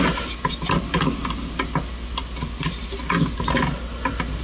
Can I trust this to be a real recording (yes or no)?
yes